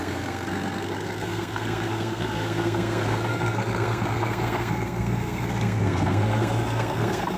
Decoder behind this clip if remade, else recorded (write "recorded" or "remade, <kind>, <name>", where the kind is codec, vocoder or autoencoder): remade, codec, SNAC